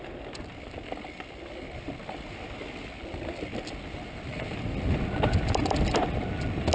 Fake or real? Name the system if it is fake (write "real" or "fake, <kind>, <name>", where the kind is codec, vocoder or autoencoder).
real